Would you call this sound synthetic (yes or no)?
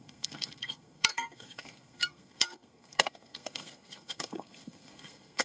yes